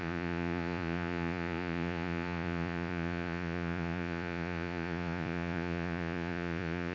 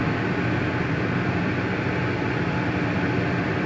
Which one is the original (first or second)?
second